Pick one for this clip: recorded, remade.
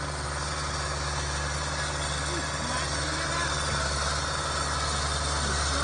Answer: recorded